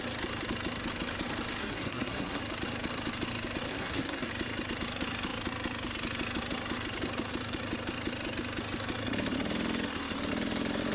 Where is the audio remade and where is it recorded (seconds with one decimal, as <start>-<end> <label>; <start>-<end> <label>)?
0.0-1.6 recorded; 1.6-2.4 remade; 2.4-3.7 recorded; 3.7-4.3 remade; 4.3-10.9 recorded